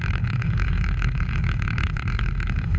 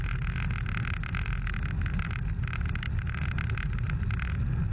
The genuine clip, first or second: second